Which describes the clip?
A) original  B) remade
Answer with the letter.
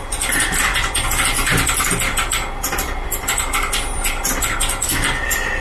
A